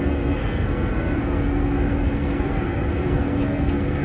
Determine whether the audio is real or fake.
fake